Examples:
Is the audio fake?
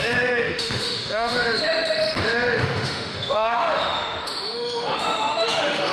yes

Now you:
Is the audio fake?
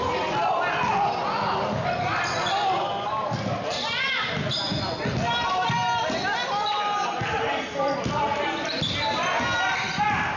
no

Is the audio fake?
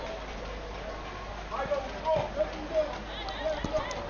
no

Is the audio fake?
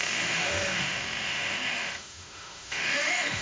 yes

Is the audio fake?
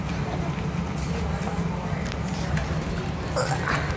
no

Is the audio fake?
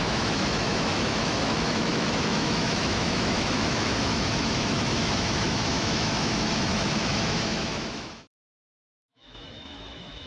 yes